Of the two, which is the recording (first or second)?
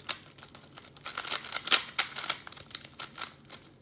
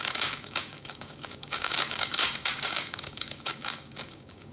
first